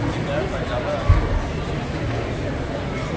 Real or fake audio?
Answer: real